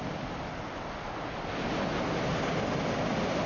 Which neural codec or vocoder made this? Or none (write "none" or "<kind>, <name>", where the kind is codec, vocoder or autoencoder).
none